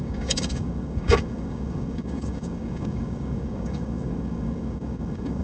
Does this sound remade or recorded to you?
remade